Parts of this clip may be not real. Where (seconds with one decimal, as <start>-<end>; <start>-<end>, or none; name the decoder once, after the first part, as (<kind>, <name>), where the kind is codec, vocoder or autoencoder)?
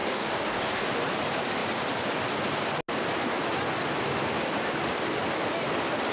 0.0-0.9 (codec, DAC)